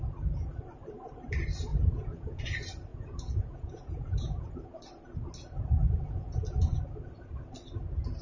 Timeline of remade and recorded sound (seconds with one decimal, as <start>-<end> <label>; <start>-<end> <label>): 0.0-1.7 recorded; 1.7-2.4 remade; 2.4-2.9 recorded; 2.9-4.5 remade; 4.5-5.8 recorded; 5.8-6.8 remade; 6.8-8.2 recorded